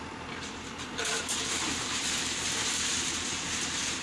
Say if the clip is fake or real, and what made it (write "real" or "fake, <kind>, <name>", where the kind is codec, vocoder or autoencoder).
fake, vocoder, BigVGAN v2